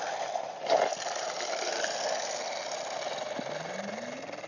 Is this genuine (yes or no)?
yes